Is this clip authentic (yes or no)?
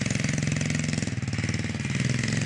yes